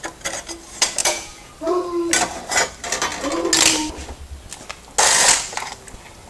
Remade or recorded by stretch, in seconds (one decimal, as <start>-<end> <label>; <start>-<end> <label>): 0.0-1.0 recorded; 1.0-1.5 remade; 1.5-6.3 recorded